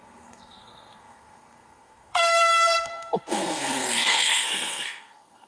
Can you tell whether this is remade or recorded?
remade